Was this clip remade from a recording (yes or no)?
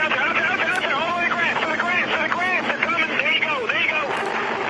yes